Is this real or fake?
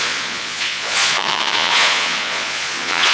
fake